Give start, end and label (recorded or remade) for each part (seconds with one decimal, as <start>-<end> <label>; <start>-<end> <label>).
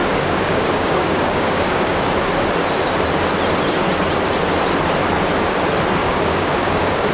0.0-2.3 remade; 2.3-6.0 recorded; 6.0-7.1 remade